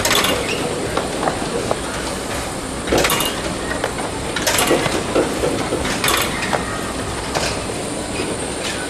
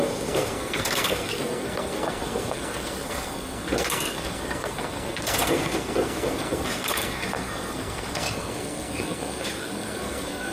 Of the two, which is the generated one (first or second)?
second